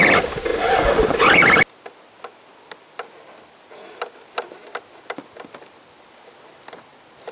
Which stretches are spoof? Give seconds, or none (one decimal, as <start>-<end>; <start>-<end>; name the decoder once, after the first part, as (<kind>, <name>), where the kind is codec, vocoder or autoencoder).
none